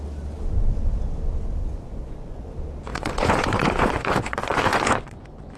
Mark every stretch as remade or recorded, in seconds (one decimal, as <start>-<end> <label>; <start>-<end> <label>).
0.0-1.6 recorded; 1.6-2.5 remade; 2.5-2.9 recorded; 2.9-5.6 remade